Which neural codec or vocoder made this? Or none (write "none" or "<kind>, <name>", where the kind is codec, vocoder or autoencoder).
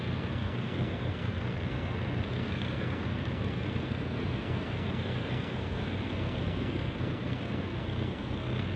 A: codec, SNAC